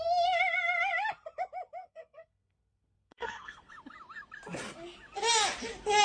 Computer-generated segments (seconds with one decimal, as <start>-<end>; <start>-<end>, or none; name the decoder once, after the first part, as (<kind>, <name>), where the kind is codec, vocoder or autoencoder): 1.8-3.7 (codec, SNAC)